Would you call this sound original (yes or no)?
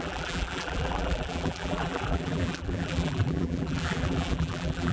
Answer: no